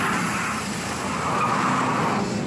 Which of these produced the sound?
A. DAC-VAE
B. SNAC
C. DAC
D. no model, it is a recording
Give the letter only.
D